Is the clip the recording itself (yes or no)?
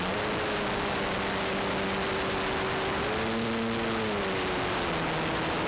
yes